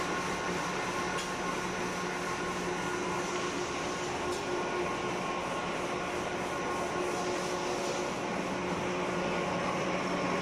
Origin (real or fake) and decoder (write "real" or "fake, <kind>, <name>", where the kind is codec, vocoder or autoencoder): real